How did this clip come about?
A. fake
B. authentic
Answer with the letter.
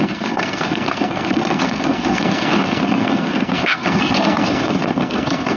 A